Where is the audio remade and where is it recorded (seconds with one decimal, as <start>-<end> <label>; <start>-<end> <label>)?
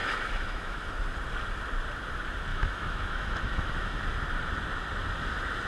0.0-0.9 remade; 0.9-2.5 recorded; 2.5-4.0 remade; 4.0-5.7 recorded